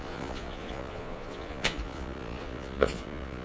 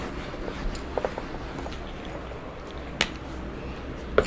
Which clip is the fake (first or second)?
first